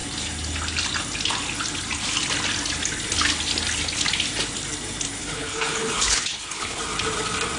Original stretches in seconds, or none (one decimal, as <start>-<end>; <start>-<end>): 0.0-5.2; 6.8-7.6